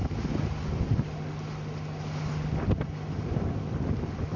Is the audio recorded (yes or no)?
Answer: yes